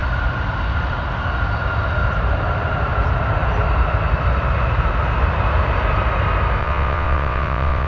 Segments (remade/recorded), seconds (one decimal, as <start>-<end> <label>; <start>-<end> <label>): 0.0-6.6 recorded; 6.6-7.9 remade